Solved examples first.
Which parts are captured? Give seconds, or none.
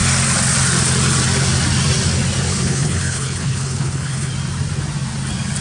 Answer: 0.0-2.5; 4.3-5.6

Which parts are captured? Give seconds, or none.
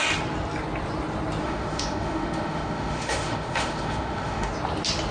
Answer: 0.0-1.4; 4.5-5.1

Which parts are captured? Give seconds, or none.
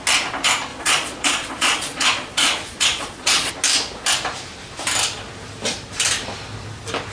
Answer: 0.0-0.7; 3.5-7.1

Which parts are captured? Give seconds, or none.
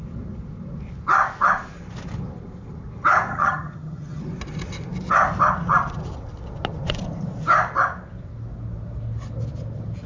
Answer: 0.0-3.3; 4.2-10.1